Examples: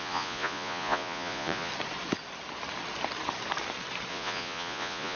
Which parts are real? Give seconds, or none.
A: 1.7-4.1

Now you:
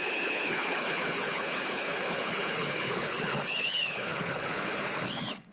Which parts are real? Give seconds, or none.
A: none

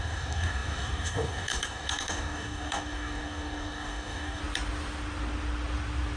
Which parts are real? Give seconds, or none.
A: 4.4-6.2

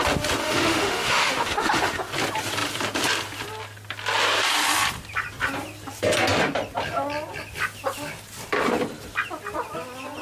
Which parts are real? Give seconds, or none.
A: 0.0-0.4; 2.0-10.2

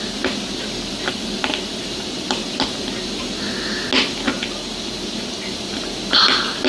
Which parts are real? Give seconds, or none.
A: 0.0-6.7

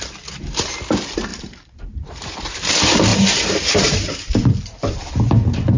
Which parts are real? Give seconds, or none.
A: 0.0-1.3; 2.7-3.1; 4.5-5.8

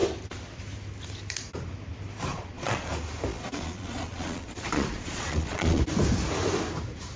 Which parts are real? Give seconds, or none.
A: 0.0-2.3; 2.9-3.3; 5.8-7.2